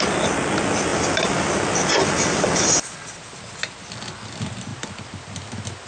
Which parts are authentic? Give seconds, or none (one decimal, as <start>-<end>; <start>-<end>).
0.0-5.9